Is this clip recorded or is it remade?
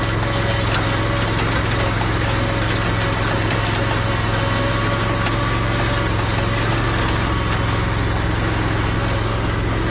recorded